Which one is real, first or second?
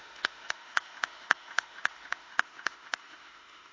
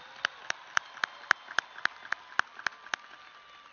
second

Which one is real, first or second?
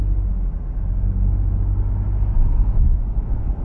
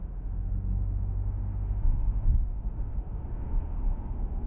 first